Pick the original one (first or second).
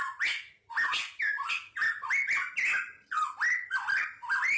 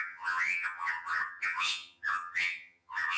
first